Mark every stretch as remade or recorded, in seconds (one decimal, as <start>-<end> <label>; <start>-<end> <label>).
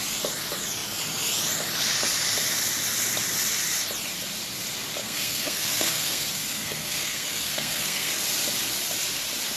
0.0-5.0 recorded; 5.0-8.1 remade; 8.1-9.6 recorded